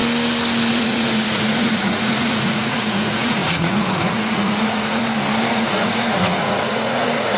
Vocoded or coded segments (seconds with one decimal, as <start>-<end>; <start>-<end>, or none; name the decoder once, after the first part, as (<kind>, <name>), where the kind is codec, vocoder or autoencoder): 0.7-5.0 (vocoder, Vocos); 5.5-7.4